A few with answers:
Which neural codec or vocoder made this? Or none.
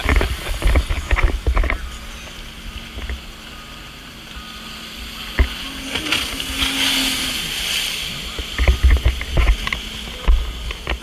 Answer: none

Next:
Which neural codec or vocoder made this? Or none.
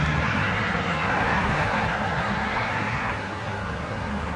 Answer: codec, SNAC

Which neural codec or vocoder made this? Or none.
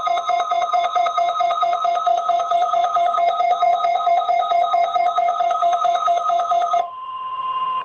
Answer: vocoder, HiFi-GAN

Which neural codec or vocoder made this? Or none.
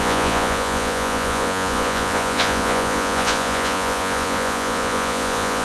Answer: vocoder, Vocos